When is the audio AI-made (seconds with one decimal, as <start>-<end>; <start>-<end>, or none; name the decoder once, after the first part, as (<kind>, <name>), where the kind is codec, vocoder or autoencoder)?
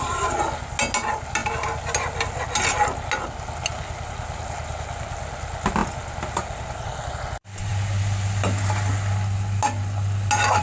none